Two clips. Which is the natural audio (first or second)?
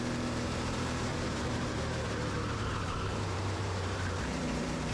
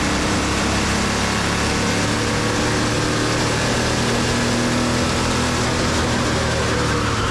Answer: second